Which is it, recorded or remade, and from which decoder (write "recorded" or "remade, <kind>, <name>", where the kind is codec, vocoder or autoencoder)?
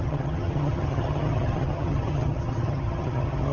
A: remade, vocoder, HiFi-GAN